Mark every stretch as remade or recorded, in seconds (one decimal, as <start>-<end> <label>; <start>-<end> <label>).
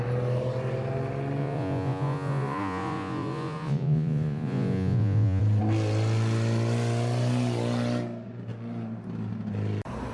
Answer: 0.0-1.4 recorded; 1.4-5.4 remade; 5.4-10.1 recorded